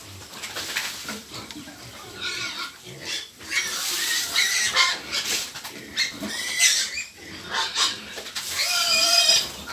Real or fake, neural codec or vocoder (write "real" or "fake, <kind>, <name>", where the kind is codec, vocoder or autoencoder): fake, vocoder, BigVGAN v2